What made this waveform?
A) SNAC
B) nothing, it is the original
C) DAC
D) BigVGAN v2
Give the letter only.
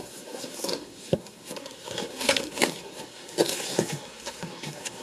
A